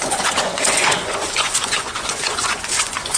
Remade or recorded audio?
remade